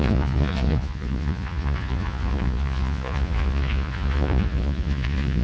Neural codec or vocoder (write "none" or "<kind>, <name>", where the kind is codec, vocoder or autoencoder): vocoder, Vocos